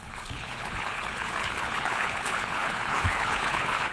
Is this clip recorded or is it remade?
remade